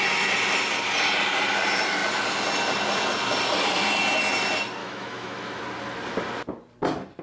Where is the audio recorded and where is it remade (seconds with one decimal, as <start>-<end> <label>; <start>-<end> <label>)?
0.0-4.8 recorded; 4.8-5.6 remade; 5.6-7.2 recorded